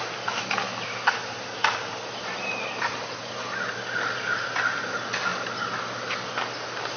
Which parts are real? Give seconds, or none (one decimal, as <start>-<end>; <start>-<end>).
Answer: 0.0-7.0